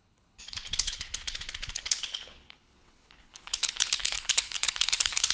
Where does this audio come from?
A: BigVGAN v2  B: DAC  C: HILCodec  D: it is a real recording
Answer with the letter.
C